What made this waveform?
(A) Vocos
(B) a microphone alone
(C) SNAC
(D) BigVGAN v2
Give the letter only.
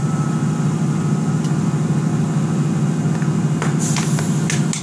B